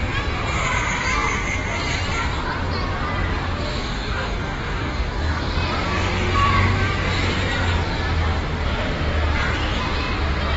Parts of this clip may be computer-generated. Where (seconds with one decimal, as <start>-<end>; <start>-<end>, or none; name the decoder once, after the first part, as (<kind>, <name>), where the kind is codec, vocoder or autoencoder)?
3.8-5.4 (codec, DAC)